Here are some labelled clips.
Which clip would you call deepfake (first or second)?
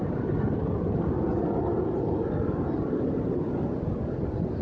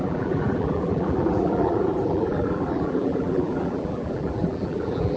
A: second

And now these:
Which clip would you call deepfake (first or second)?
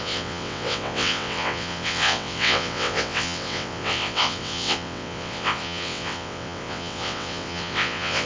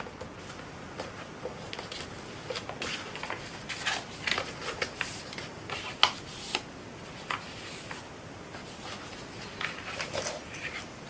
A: first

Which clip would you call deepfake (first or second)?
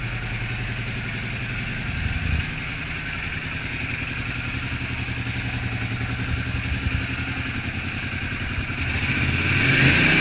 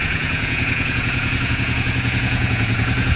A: second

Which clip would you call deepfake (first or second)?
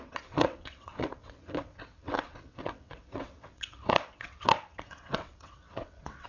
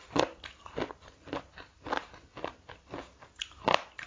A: first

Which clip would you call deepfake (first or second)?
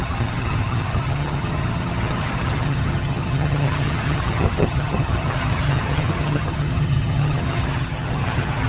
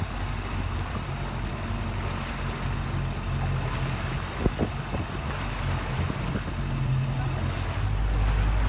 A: first